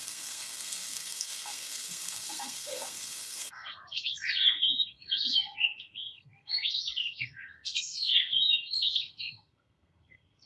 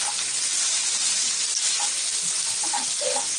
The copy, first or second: first